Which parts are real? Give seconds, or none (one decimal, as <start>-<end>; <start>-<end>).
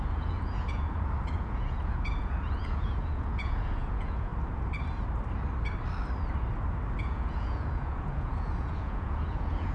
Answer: 4.3-7.0